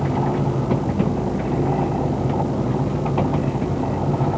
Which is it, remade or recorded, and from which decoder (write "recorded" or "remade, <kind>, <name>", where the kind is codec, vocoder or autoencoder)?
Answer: recorded